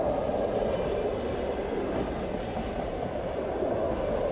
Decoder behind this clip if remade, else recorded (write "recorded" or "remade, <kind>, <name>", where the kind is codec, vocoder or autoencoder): recorded